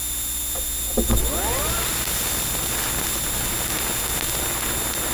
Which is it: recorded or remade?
recorded